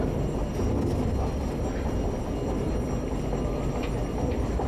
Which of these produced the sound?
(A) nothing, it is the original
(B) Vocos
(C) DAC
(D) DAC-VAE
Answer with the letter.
A